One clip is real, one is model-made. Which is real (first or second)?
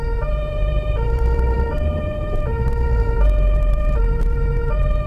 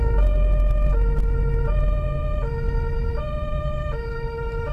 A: second